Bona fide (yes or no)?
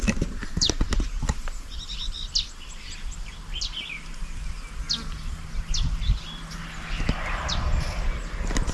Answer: yes